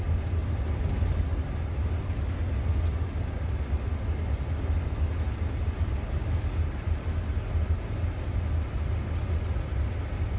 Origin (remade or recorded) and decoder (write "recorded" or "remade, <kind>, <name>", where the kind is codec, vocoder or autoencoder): recorded